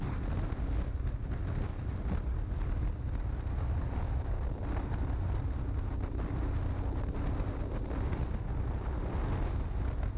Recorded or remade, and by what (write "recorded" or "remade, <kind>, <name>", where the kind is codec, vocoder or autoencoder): recorded